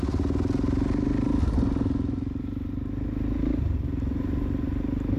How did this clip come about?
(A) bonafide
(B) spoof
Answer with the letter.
A